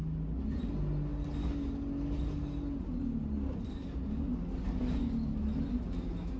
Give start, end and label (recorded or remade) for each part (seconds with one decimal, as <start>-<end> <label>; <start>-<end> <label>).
0.0-6.4 recorded